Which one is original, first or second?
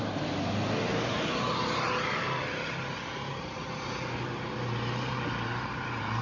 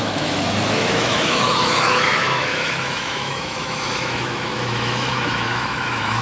first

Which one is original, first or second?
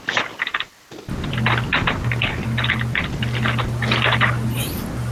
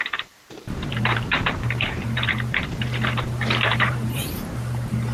first